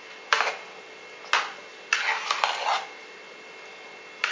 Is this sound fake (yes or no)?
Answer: no